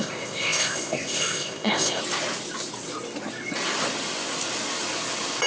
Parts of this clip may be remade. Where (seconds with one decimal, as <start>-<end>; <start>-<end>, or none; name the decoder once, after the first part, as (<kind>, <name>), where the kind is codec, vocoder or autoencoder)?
0.0-2.0 (codec, ZipCodec)